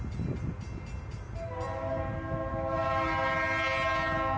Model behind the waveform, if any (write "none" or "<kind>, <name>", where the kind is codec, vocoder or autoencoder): none